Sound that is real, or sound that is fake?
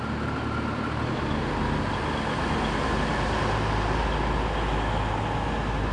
real